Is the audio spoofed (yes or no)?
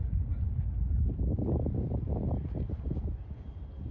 no